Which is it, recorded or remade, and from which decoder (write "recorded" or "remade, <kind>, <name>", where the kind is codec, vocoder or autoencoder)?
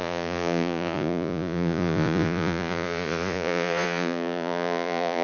remade, vocoder, Vocos